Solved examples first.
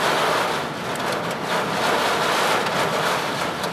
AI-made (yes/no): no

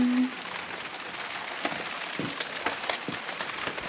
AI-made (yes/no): no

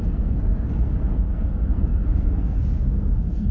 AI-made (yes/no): yes